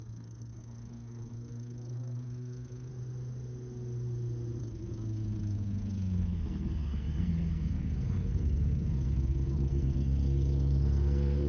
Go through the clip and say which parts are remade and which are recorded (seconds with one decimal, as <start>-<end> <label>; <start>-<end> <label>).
0.0-2.9 remade; 2.9-4.6 recorded; 4.6-11.5 remade